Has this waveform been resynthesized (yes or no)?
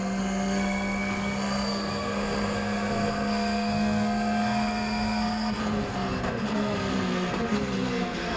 yes